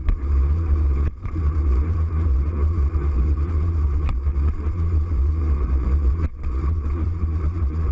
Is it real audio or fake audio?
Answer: fake